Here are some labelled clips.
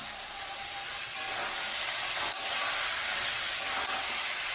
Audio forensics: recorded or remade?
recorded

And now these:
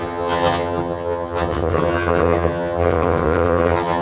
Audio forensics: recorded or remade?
remade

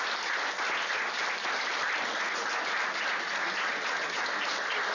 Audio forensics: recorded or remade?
recorded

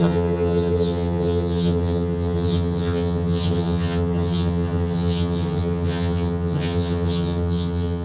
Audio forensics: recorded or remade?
remade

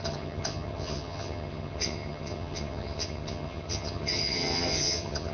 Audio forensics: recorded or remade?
remade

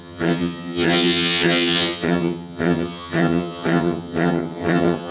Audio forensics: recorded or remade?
remade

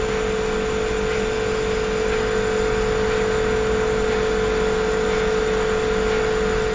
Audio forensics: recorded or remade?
recorded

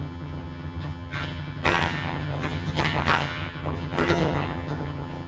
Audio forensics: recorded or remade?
remade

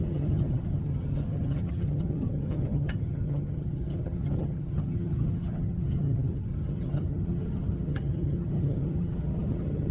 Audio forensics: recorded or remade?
remade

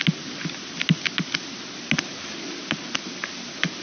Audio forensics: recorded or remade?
recorded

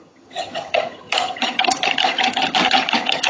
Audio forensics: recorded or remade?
remade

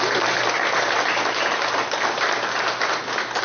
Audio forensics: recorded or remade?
recorded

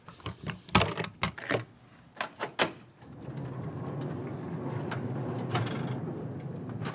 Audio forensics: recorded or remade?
recorded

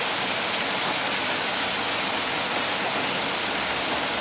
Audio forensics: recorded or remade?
recorded